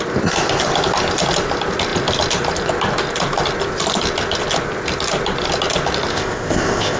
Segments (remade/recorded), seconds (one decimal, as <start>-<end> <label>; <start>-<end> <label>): 0.0-6.1 recorded; 6.1-7.0 remade